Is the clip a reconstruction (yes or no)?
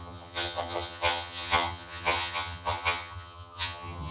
yes